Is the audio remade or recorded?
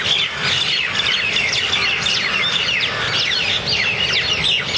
recorded